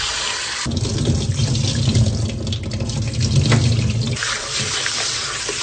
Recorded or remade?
recorded